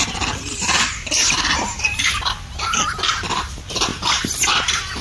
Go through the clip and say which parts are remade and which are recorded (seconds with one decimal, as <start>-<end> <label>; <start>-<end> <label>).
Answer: 0.0-5.0 recorded

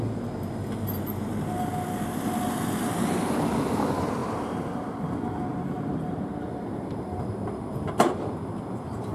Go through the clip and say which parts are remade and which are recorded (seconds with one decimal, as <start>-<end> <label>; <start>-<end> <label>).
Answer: 0.0-5.5 recorded; 5.5-7.3 remade; 7.3-9.1 recorded

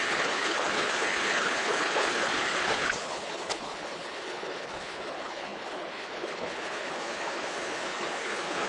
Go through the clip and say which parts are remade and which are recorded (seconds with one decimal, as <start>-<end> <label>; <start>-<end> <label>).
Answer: 0.0-8.7 remade

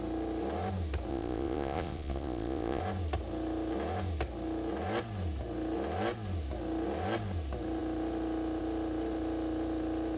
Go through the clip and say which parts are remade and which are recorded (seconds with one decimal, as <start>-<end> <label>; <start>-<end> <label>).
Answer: 0.0-1.1 recorded; 1.1-2.8 remade; 2.8-10.2 recorded

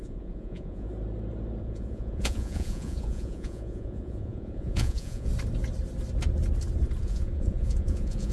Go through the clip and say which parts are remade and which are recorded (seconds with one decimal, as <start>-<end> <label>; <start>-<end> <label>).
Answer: 0.0-0.9 remade; 0.9-1.6 recorded; 1.6-5.3 remade; 5.3-7.0 recorded; 7.0-8.3 remade